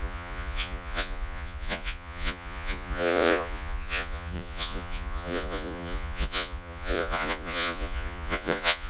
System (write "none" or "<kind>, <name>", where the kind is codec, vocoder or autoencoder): vocoder, Vocos